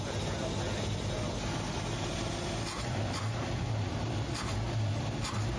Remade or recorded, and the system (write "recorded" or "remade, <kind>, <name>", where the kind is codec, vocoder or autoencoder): recorded